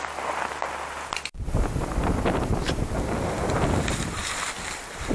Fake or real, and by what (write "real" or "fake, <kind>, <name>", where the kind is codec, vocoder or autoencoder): real